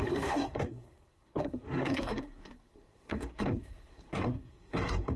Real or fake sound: fake